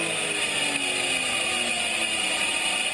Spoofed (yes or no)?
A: no